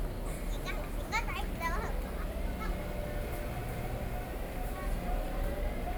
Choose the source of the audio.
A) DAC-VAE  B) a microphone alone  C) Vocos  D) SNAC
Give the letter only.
B